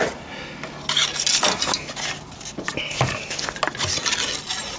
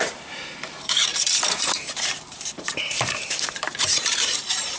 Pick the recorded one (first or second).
first